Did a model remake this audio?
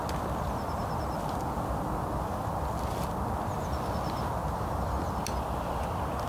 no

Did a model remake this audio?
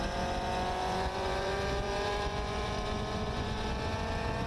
yes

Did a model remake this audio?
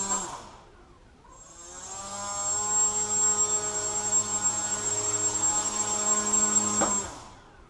no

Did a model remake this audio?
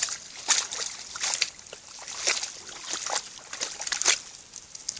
no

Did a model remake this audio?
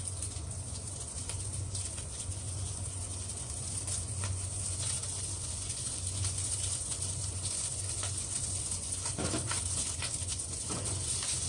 yes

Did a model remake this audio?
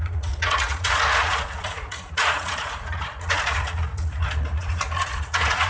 yes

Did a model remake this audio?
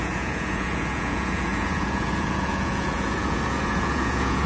yes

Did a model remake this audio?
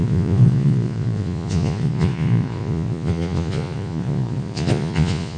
yes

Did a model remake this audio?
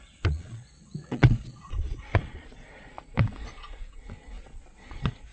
yes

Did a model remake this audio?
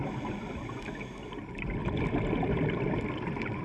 no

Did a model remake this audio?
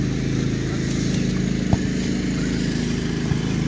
no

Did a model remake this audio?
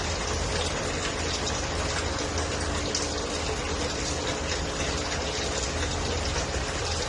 no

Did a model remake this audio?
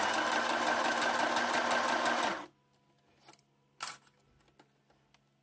no